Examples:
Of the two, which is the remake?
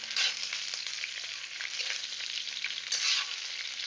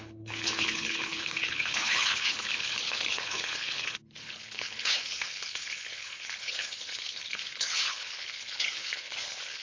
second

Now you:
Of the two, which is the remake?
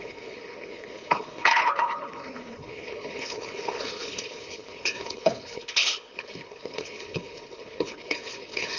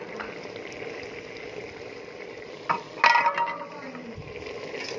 first